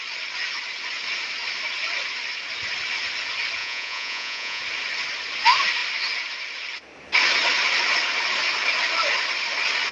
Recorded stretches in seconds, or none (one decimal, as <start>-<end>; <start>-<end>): 0.0-3.6; 4.6-9.9